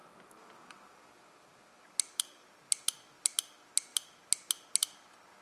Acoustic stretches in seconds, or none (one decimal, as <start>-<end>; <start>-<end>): 0.0-5.4